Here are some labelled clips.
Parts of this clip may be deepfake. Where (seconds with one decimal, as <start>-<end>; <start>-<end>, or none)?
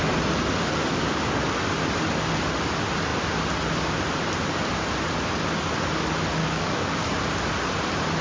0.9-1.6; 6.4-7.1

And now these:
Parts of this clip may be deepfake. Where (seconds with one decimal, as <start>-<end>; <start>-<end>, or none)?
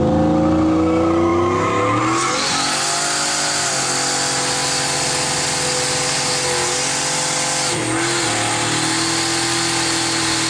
none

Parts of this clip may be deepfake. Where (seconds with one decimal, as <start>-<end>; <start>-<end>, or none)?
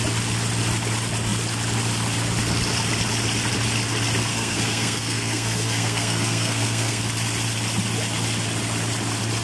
4.3-7.0